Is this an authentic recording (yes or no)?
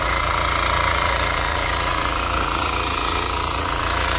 no